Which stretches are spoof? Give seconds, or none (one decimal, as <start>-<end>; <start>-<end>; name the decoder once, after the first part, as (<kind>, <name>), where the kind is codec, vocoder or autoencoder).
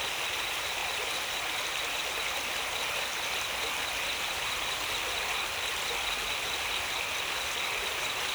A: none